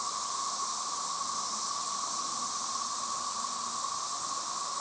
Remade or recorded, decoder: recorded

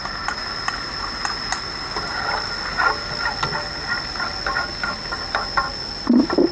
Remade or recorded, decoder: recorded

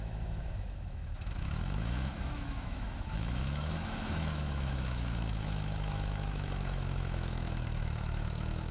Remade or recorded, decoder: remade, autoencoder, DAC-VAE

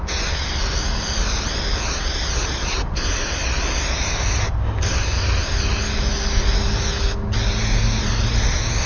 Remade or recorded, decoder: recorded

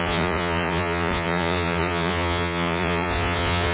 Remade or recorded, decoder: remade, vocoder, Vocos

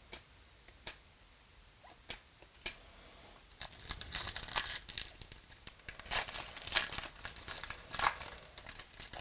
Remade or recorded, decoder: recorded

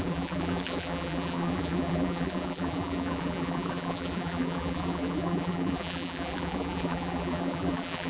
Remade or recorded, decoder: remade, vocoder, BigVGAN v2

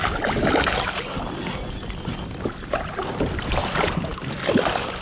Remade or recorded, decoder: recorded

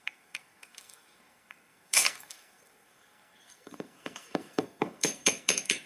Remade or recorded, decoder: remade, codec, SNAC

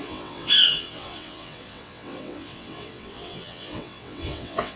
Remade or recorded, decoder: remade, vocoder, WaveNeXt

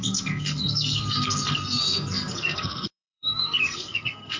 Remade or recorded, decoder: remade, codec, SNAC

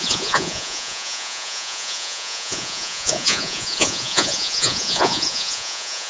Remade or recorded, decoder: remade, vocoder, Vocos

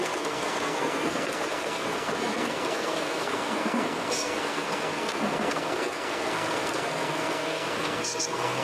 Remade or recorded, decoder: remade, codec, SNAC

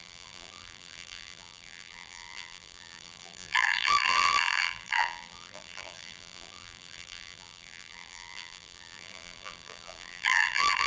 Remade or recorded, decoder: remade, vocoder, BigVGAN v2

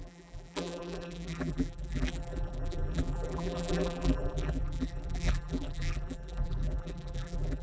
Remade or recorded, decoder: remade, vocoder, BigVGAN v2